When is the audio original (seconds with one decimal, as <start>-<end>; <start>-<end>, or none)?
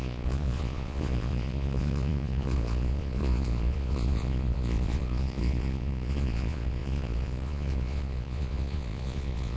none